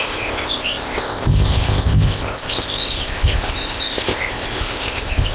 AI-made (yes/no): yes